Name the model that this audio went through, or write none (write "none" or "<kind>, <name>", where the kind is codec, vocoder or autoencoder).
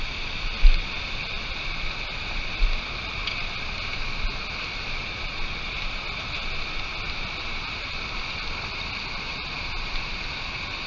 none